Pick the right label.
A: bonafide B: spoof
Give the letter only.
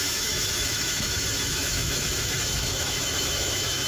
B